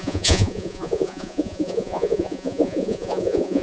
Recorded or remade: remade